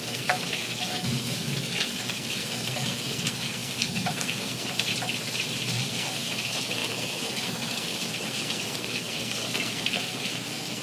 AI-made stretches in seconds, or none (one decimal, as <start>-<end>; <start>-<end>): 0.0-4.9; 5.7-10.8